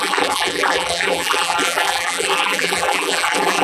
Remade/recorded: remade